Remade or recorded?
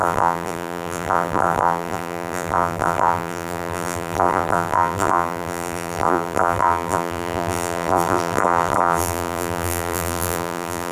remade